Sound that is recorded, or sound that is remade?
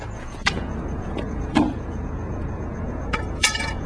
remade